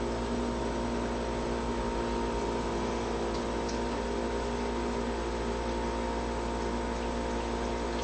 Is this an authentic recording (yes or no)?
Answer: yes